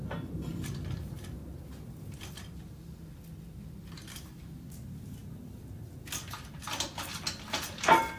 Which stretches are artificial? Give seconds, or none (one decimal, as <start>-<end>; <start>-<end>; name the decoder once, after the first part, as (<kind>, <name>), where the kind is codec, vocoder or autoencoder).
none